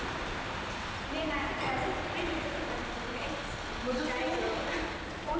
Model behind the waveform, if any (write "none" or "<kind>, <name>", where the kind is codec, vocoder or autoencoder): none